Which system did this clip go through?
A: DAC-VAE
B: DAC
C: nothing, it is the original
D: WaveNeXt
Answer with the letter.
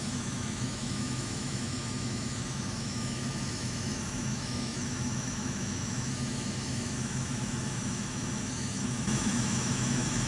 A